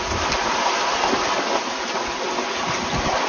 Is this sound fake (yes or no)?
no